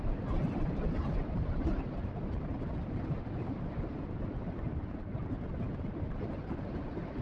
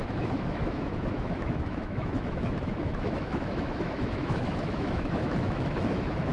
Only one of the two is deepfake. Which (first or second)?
second